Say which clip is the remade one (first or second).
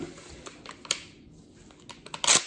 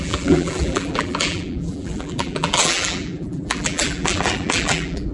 second